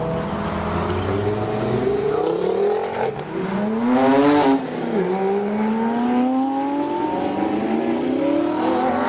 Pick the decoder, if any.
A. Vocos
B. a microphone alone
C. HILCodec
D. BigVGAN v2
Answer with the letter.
B